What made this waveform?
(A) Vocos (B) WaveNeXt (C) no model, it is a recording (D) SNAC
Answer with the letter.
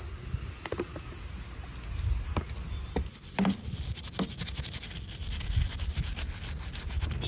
C